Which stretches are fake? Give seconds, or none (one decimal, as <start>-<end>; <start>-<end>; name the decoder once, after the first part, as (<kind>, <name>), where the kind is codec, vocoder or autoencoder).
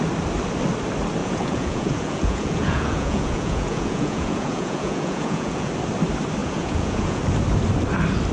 1.2-5.7 (vocoder, Vocos); 6.4-7.2